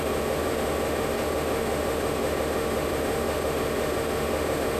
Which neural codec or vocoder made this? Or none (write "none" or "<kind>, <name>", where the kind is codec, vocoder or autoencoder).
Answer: autoencoder, DAC-VAE